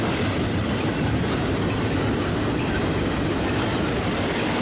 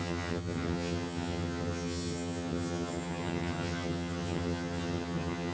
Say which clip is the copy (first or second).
second